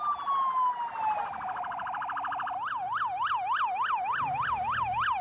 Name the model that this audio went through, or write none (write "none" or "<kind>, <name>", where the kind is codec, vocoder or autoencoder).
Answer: none